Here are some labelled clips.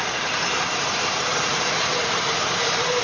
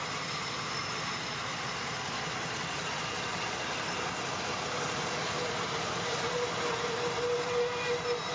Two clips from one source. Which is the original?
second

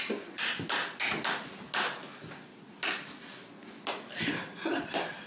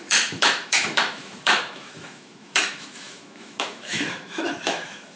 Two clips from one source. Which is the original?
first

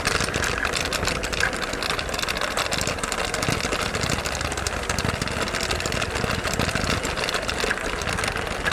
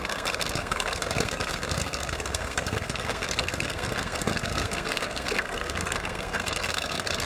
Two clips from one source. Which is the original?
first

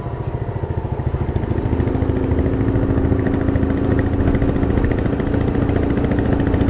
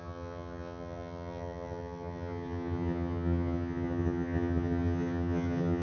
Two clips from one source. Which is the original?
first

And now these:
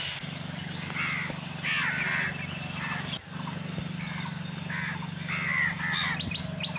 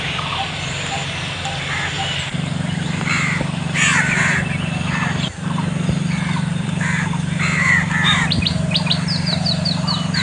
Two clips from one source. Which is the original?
first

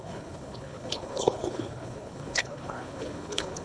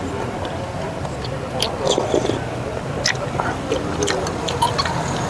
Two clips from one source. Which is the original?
second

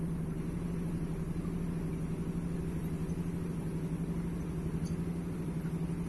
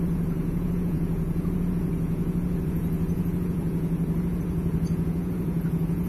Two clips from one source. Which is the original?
first